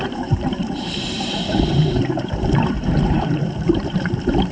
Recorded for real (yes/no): no